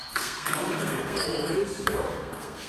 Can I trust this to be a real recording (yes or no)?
no